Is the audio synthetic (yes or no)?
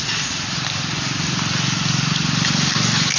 no